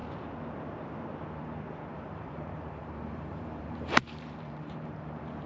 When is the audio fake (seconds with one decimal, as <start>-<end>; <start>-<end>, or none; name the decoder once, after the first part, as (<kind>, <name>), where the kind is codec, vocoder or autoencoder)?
1.9-5.5 (vocoder, BigVGAN v2)